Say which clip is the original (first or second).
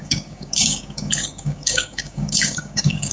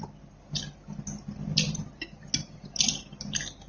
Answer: second